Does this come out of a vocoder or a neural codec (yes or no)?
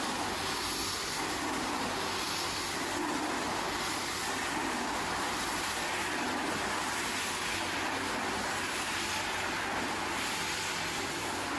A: no